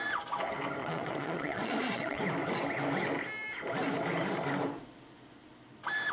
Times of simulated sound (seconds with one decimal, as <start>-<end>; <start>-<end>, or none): 0.8-2.2